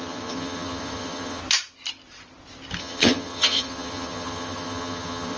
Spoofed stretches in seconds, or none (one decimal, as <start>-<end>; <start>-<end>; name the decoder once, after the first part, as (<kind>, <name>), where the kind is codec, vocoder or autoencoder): 0.0-1.4 (vocoder, HiFi-GAN); 2.8-5.4